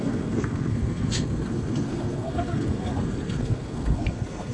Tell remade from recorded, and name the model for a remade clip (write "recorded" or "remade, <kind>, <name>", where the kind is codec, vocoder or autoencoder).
remade, codec, SNAC